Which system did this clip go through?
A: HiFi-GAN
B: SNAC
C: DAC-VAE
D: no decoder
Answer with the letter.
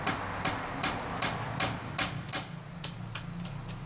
D